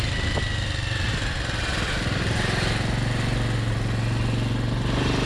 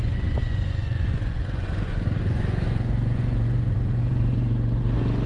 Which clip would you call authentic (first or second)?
first